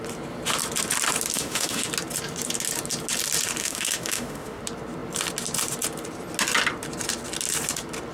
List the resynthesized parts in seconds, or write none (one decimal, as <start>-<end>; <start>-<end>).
1.3-1.9; 3.6-4.6